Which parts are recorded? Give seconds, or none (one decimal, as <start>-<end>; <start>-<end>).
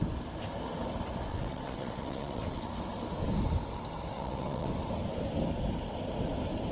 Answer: 0.0-1.3; 2.7-4.1; 4.7-6.7